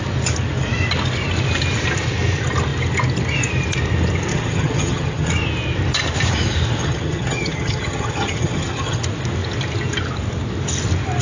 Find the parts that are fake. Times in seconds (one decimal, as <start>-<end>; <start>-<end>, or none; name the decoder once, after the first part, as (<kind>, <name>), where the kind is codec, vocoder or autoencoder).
4.3-5.3 (vocoder, HiFi-GAN); 6.8-9.0